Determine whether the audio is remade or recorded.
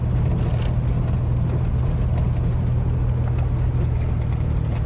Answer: recorded